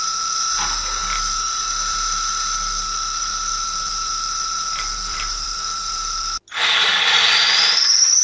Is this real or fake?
fake